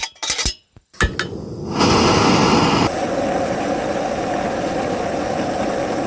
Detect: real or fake real